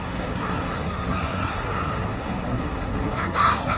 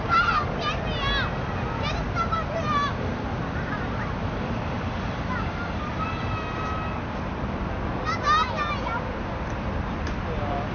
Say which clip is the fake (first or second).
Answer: first